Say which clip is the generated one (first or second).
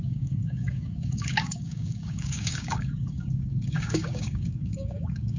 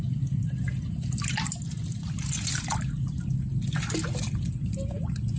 first